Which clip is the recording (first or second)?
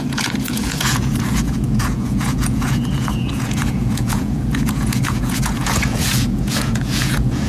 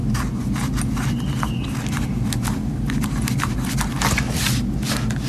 second